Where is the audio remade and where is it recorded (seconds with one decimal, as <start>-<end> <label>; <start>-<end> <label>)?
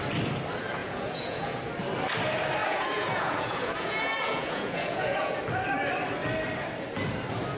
0.0-0.8 recorded; 0.8-1.6 remade; 1.6-2.6 recorded; 2.6-5.4 remade; 5.4-7.6 recorded